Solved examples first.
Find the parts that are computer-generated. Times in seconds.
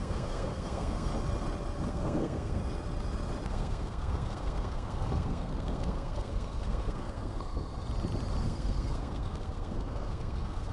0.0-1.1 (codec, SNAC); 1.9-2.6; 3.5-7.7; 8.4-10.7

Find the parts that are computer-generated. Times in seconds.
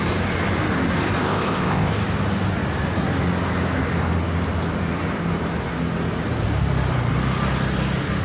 1.2-1.9 (codec, ZipCodec)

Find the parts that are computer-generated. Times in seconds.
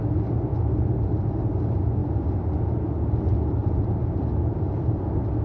0.5-1.3 (vocoder, BigVGAN v2); 3.6-4.2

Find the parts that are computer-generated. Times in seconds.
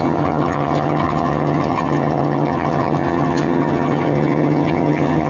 0.0-5.3 (vocoder, HiFi-GAN)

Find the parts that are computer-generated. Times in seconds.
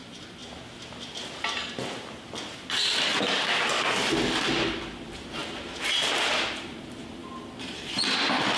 5.4-6.8 (vocoder, BigVGAN v2)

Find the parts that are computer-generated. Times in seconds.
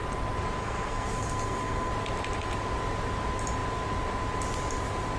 0.6-1.9 (codec, SNAC)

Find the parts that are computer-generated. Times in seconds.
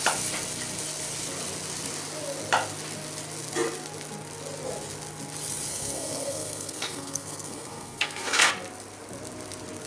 5.7-8.5 (codec, SNAC)